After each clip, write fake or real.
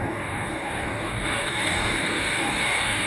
fake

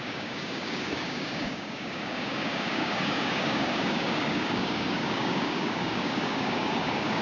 fake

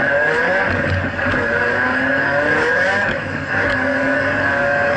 fake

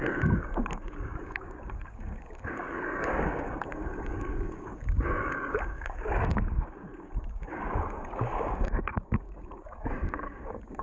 fake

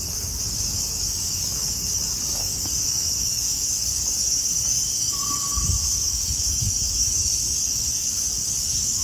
fake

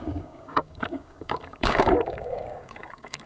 fake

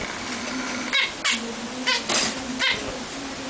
real